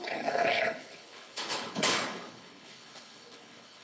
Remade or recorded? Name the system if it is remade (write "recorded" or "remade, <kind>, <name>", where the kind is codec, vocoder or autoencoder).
remade, codec, HILCodec